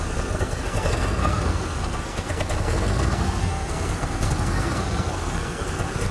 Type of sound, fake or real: fake